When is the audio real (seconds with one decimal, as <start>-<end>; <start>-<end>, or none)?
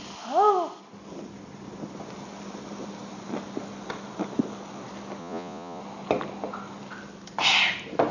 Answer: 0.0-5.2; 5.8-8.1